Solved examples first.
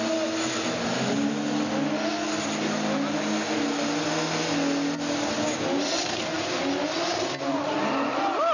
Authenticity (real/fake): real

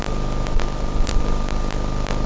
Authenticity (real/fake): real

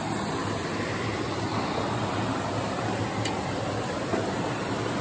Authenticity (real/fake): real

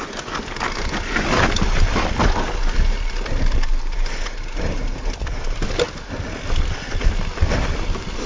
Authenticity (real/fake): real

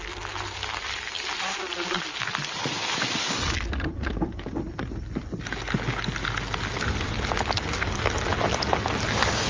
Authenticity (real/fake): real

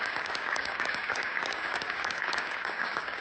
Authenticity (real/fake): fake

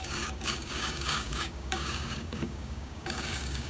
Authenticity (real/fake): fake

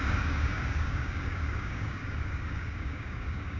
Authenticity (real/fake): fake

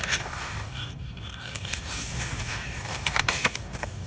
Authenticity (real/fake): fake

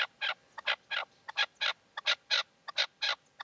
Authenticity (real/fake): real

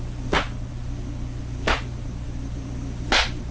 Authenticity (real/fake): real